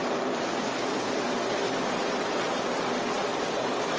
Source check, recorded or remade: recorded